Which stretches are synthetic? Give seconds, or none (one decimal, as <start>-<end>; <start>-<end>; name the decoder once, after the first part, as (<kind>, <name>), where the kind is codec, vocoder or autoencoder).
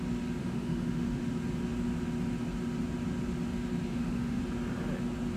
0.4-1.2 (autoencoder, DAC-VAE); 3.9-4.4